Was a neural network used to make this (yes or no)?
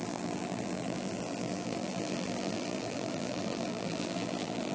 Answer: yes